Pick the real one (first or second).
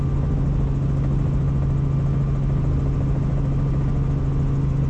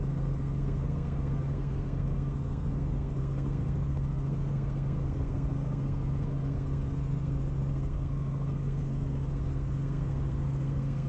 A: first